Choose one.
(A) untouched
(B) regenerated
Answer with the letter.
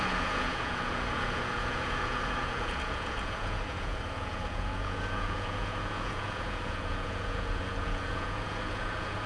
B